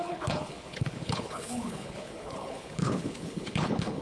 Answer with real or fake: fake